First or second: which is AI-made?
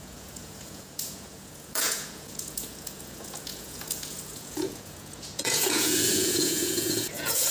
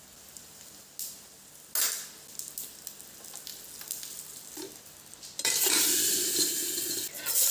first